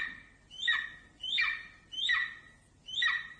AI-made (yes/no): no